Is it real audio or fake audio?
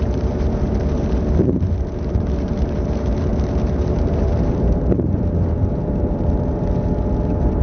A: fake